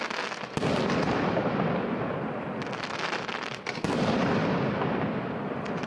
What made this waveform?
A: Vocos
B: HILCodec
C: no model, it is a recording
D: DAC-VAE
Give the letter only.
C